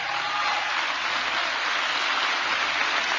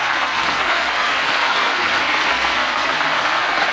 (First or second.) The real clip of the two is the first